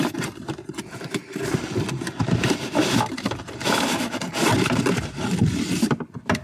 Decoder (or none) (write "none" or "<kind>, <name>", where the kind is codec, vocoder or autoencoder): vocoder, BigVGAN v2